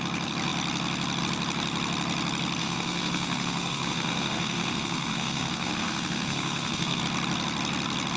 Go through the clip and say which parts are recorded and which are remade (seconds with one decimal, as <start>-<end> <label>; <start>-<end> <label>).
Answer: 0.0-2.6 recorded; 2.6-7.0 remade; 7.0-8.2 recorded